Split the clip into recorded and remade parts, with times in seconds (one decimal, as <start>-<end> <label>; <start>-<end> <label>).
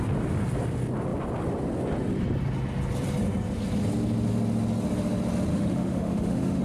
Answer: 0.0-5.5 recorded; 5.5-6.6 remade